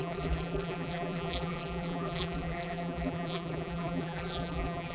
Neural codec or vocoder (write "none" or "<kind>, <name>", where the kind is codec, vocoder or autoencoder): vocoder, BigVGAN v2